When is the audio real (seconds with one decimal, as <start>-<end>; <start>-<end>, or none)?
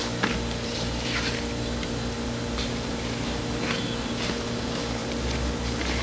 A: 0.0-6.0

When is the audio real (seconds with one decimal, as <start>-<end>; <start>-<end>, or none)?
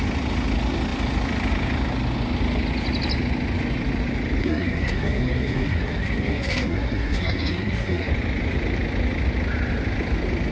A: 0.0-4.4; 8.1-10.5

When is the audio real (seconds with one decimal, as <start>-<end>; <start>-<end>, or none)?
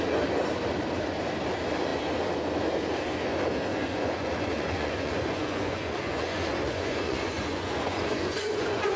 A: 0.0-3.7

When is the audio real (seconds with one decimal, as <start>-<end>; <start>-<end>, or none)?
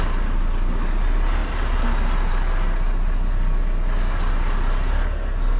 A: 0.0-5.6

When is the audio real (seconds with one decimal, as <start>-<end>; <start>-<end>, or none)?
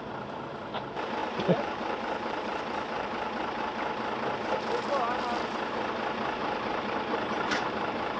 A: 0.0-1.2; 3.6-6.4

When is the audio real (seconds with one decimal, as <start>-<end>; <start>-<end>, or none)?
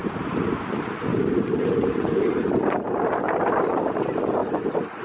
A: 0.6-1.1; 3.8-4.4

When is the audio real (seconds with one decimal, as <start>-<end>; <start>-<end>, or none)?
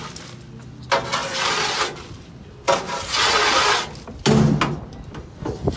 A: 0.0-1.2; 2.3-5.8